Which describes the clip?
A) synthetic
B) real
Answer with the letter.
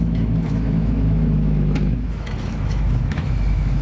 A